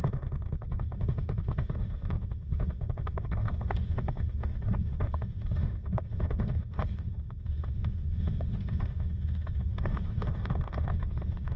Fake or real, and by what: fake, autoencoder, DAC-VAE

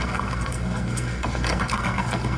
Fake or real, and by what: fake, codec, SNAC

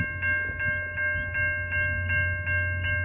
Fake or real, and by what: real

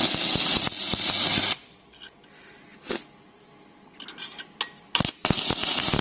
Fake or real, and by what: real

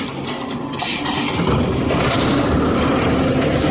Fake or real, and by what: real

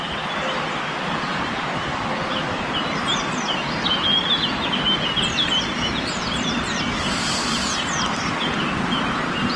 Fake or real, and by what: real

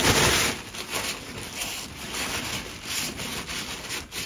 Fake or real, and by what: real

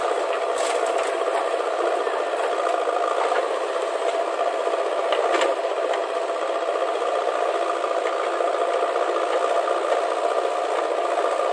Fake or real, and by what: real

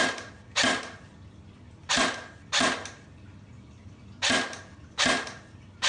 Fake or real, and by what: real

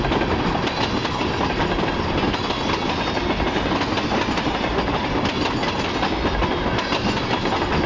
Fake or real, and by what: real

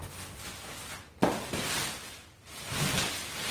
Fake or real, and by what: real